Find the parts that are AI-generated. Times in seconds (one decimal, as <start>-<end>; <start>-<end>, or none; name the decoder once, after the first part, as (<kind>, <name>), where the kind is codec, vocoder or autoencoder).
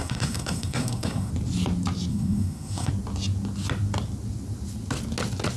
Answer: 0.0-1.3 (codec, SNAC); 2.1-2.9